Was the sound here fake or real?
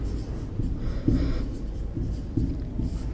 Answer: real